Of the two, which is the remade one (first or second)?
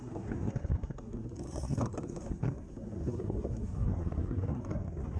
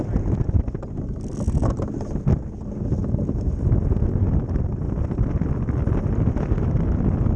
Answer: first